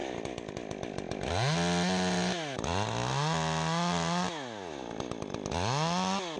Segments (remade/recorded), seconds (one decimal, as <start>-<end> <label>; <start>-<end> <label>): 0.0-6.4 recorded